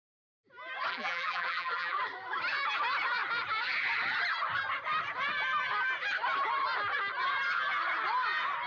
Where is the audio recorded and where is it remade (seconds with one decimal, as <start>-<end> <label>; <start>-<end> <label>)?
0.0-0.9 recorded; 0.9-2.0 remade; 2.0-8.7 recorded